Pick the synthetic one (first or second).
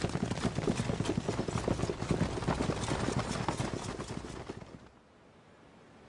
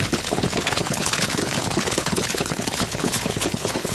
second